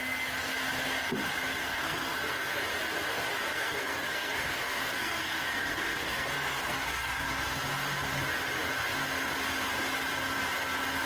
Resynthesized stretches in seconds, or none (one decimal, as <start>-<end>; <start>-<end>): 1.6-2.6; 3.5-7.6